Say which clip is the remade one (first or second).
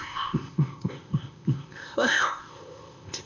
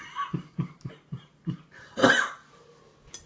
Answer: first